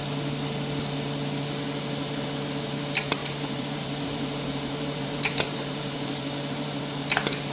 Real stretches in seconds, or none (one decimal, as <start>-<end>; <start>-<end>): 0.0-3.2; 6.8-7.5